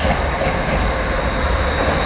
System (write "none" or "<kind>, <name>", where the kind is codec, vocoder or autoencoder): none